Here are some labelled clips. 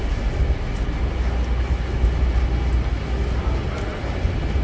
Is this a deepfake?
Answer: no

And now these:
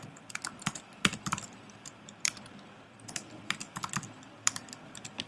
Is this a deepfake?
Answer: yes